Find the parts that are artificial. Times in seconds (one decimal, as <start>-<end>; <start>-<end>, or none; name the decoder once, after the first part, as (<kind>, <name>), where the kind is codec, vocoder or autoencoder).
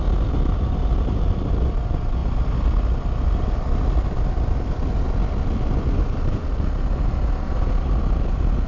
none